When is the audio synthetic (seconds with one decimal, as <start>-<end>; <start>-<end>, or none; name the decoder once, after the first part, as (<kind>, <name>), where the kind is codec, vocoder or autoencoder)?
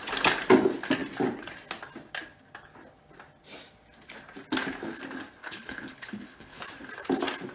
5.4-6.6 (codec, HILCodec)